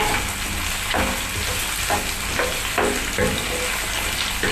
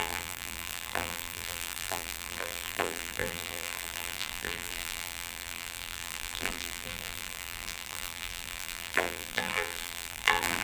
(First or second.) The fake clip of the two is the second